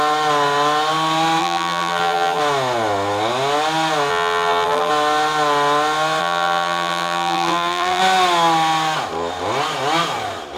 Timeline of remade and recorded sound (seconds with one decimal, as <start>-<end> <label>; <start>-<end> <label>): 0.0-1.4 recorded; 1.4-2.4 remade; 2.4-4.1 recorded; 4.1-4.9 remade; 4.9-6.2 recorded; 6.2-8.0 remade; 8.0-10.6 recorded